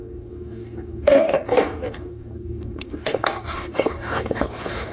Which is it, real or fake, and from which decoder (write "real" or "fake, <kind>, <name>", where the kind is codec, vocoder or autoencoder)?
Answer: fake, codec, DAC